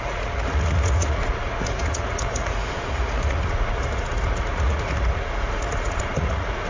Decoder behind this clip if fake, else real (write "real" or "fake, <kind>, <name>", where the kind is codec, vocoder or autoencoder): fake, vocoder, Vocos